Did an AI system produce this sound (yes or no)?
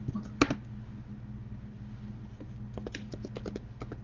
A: no